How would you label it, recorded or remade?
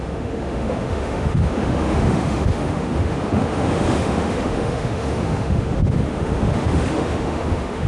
remade